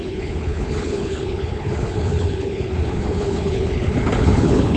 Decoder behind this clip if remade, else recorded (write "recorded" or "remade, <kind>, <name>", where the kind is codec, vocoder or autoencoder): remade, codec, HILCodec